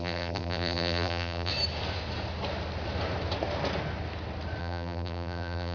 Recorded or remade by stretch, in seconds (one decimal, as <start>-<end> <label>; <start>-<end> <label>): 0.0-1.5 remade; 1.5-4.6 recorded; 4.6-5.7 remade